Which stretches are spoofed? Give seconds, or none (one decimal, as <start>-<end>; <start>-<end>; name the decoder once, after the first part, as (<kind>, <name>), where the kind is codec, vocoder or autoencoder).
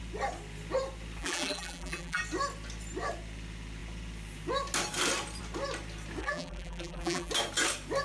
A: 1.2-2.2 (vocoder, BigVGAN v2); 6.2-7.3